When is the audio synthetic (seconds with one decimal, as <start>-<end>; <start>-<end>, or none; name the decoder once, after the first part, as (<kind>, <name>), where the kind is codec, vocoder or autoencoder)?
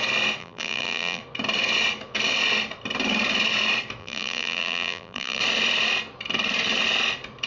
0.4-1.2 (vocoder, BigVGAN v2); 4.0-5.4